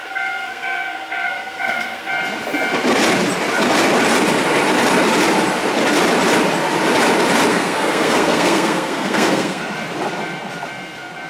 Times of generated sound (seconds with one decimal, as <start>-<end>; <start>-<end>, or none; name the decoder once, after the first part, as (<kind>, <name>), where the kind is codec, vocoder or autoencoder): 0.0-2.1 (codec, SNAC); 7.5-9.6